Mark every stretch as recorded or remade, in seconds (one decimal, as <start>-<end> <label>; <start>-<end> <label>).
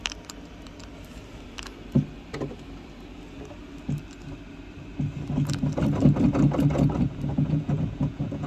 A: 0.0-7.3 recorded; 7.3-8.5 remade